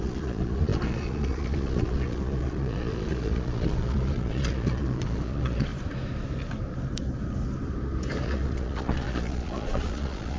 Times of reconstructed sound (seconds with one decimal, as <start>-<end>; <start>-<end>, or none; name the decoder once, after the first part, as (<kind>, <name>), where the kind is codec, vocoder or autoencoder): 0.0-5.7 (vocoder, Vocos); 8.2-10.4